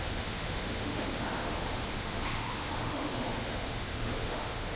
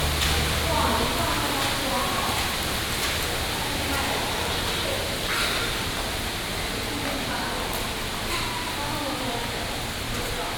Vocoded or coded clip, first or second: first